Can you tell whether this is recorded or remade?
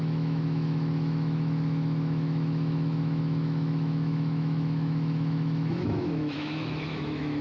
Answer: remade